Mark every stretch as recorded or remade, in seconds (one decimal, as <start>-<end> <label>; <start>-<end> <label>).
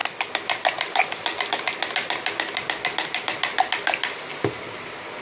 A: 0.0-5.2 recorded